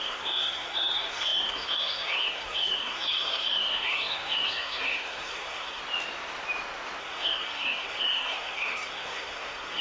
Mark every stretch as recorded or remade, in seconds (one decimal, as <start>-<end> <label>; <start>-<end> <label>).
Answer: 0.0-5.8 remade; 5.8-7.0 recorded; 7.0-9.8 remade